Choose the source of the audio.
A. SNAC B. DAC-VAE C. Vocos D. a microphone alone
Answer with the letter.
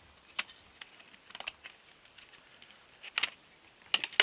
D